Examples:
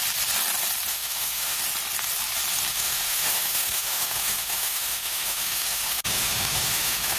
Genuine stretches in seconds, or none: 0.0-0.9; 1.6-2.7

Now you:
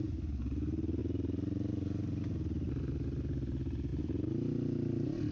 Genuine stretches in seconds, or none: 0.0-5.3